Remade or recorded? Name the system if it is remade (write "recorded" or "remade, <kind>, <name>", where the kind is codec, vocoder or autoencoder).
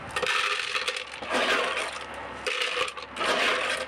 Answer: recorded